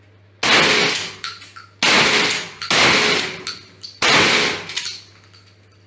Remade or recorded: recorded